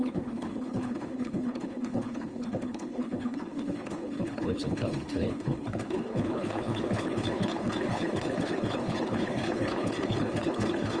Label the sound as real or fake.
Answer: fake